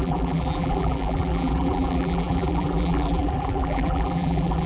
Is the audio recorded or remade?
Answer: remade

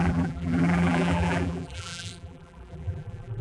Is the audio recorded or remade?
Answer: remade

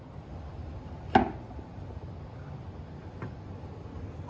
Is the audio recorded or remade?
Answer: recorded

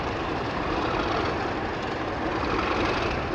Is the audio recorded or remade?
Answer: recorded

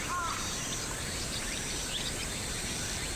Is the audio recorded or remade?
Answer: remade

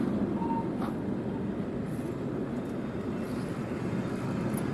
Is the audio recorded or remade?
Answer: recorded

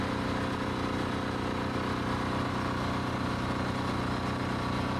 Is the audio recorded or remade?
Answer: recorded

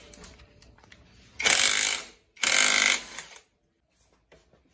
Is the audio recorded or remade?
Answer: recorded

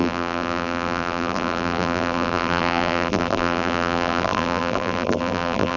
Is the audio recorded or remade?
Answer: remade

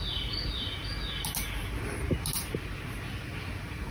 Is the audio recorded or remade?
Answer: recorded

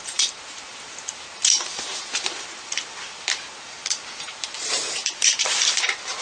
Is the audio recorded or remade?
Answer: remade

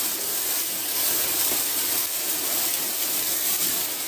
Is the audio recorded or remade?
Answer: remade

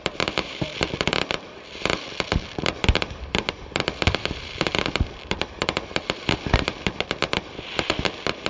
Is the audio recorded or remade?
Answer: remade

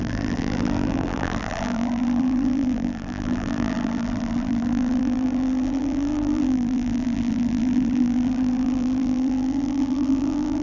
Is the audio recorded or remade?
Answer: remade